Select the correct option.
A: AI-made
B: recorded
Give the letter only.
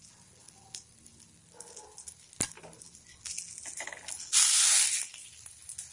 B